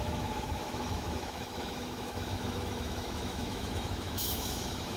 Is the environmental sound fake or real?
fake